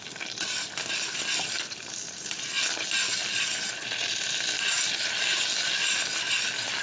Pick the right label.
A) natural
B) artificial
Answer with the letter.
A